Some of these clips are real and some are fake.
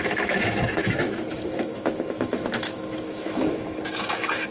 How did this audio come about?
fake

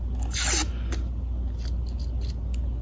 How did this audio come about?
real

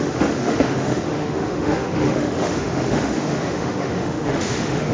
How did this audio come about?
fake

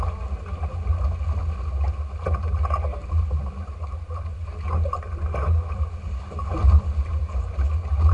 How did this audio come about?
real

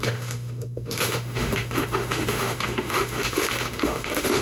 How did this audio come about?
fake